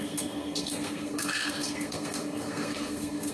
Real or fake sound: fake